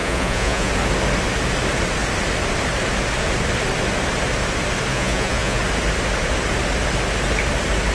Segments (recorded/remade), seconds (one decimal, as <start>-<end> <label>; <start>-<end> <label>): 0.0-0.7 remade; 0.7-4.9 recorded; 4.9-5.6 remade; 5.6-7.9 recorded